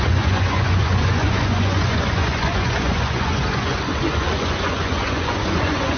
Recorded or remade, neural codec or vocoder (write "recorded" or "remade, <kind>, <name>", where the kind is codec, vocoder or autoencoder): remade, vocoder, Vocos